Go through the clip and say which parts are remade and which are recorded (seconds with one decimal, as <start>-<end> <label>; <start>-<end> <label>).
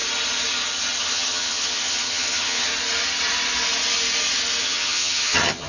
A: 0.0-1.0 recorded; 1.0-2.7 remade; 2.7-4.6 recorded; 4.6-5.7 remade